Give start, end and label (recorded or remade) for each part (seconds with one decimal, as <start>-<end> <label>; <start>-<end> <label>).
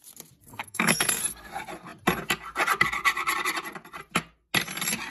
0.0-0.5 recorded; 0.5-1.5 remade; 1.5-5.1 recorded